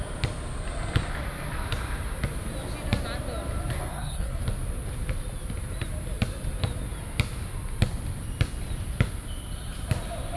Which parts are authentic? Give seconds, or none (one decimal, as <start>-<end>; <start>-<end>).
0.0-3.7; 4.4-10.4